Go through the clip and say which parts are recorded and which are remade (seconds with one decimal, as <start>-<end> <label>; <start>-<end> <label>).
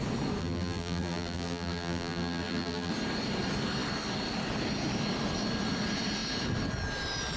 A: 0.0-0.4 recorded; 0.4-2.9 remade; 2.9-7.4 recorded